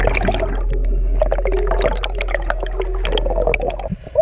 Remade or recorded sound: recorded